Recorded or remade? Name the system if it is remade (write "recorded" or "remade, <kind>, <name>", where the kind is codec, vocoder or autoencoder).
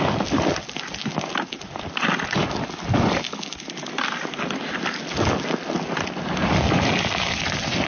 recorded